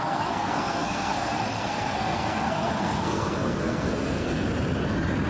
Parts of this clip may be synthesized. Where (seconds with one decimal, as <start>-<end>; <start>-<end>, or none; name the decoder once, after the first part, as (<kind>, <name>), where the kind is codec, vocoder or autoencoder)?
0.0-4.5 (codec, SNAC)